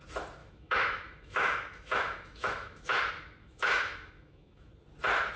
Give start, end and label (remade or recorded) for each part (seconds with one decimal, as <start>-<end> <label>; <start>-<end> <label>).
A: 0.0-0.4 recorded; 0.4-3.0 remade; 3.0-3.4 recorded; 3.4-4.7 remade; 4.7-5.4 recorded